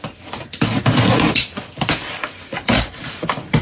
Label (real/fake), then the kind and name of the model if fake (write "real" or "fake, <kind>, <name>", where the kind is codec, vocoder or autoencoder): fake, vocoder, BigVGAN v2